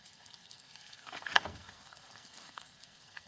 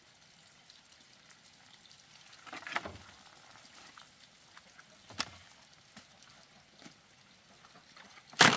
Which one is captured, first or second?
second